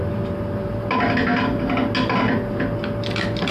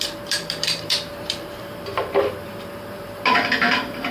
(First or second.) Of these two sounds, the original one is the first